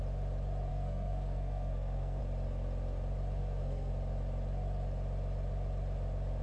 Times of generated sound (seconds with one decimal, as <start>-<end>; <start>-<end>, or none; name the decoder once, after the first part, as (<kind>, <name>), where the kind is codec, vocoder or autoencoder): 0.7-2.2 (codec, SNAC); 3.4-3.9